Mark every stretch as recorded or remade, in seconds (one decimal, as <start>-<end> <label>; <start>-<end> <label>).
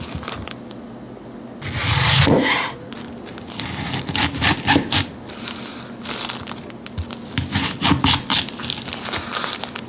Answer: 0.0-1.8 recorded; 1.8-2.9 remade; 2.9-9.9 recorded